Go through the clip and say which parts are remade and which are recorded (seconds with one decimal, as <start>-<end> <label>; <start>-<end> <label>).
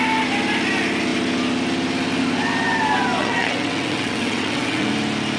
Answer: 0.0-3.2 recorded; 3.2-4.9 remade; 4.9-5.4 recorded